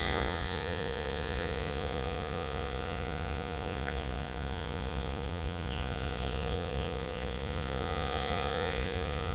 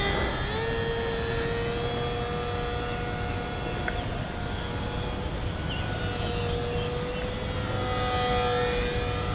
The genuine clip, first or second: second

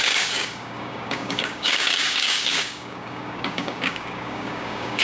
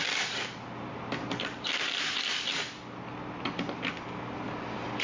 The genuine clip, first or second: second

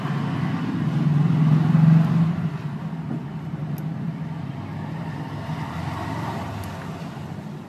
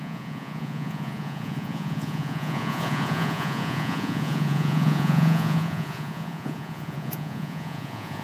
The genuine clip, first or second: first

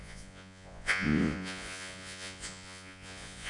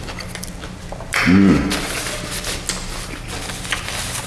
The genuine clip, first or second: second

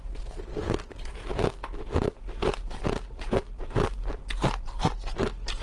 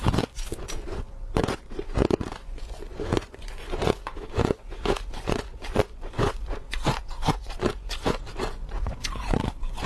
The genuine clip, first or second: first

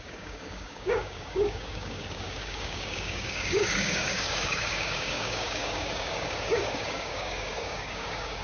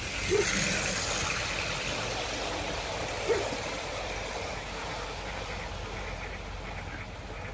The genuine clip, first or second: second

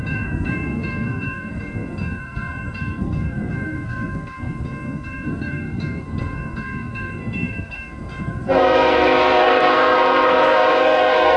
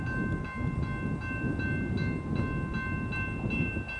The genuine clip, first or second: second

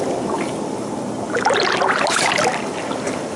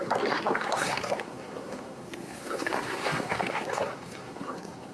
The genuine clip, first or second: first